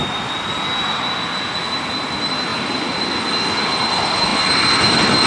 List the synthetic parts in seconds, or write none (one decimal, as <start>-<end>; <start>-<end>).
none